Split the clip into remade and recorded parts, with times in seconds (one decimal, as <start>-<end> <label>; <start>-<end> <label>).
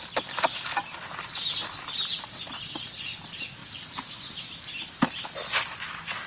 0.0-3.6 recorded; 3.6-4.1 remade; 4.1-6.3 recorded